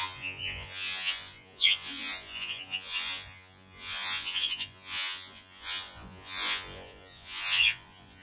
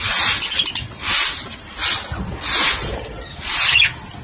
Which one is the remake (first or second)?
first